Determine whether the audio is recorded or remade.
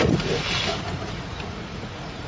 remade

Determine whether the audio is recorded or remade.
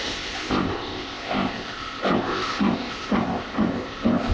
remade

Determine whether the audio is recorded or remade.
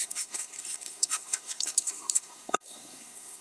remade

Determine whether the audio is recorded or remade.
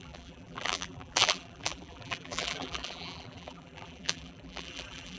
remade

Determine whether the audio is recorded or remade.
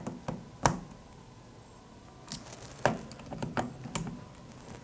recorded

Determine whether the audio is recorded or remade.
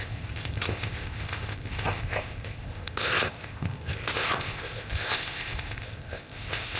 remade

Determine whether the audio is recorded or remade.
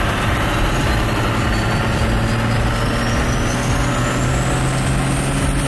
recorded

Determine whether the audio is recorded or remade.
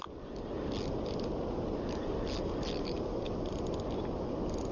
recorded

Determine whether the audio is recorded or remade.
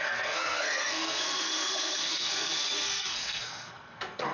remade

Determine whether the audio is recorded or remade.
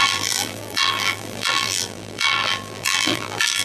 remade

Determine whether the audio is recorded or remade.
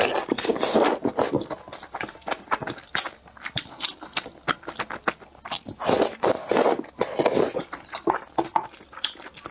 recorded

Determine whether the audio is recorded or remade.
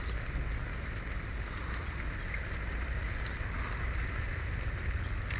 recorded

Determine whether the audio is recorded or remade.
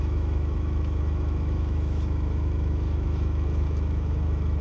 remade